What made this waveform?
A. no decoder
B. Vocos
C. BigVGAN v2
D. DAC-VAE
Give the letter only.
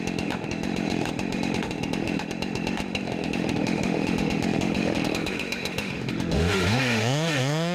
D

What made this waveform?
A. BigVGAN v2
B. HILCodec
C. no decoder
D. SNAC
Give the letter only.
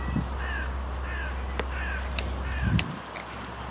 C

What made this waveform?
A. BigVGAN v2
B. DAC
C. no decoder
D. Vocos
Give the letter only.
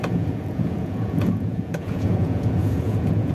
D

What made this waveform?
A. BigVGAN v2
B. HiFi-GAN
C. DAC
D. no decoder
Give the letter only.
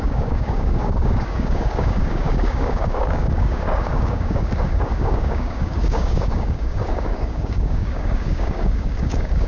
C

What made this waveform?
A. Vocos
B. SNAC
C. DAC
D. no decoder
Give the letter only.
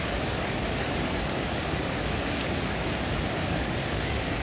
C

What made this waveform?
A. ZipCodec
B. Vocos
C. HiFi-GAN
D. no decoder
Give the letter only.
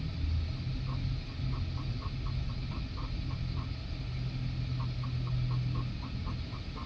D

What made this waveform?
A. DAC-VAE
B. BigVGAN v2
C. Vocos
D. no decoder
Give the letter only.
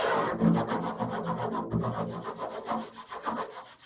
D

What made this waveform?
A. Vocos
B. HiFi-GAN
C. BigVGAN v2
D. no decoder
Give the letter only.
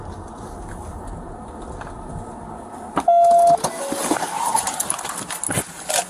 D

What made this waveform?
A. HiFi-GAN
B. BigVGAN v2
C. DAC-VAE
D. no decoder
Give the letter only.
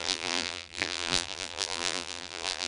B